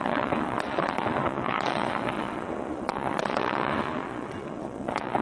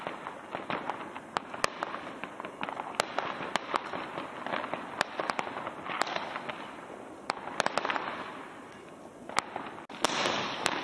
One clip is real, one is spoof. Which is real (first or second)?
second